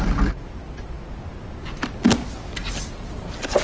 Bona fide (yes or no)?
yes